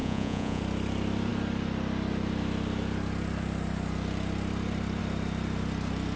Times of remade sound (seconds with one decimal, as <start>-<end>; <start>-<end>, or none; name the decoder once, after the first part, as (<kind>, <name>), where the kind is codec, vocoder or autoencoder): 0.0-0.6 (vocoder, Vocos)